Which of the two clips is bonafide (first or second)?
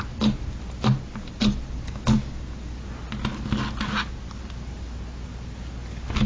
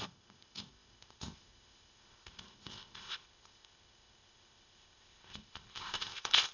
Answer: first